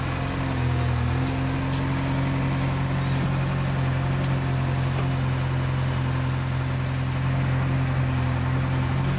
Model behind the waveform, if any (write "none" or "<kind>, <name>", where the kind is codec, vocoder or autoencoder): none